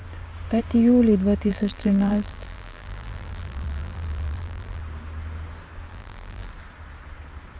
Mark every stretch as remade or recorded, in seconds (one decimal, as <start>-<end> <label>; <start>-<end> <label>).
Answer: 0.0-1.5 recorded; 1.5-4.8 remade; 4.8-5.9 recorded; 5.9-6.5 remade; 6.5-7.6 recorded